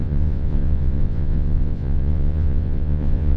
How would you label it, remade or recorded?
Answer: remade